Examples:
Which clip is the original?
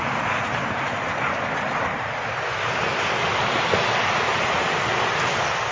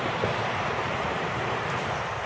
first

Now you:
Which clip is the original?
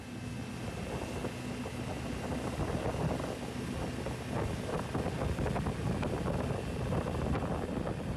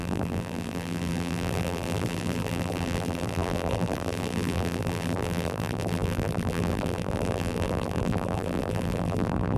first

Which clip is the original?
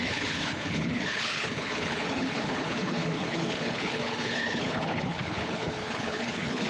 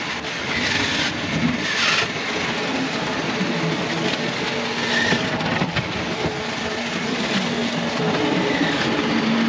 second